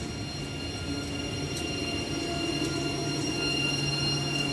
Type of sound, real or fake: real